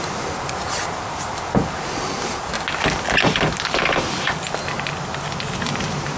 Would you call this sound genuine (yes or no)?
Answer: yes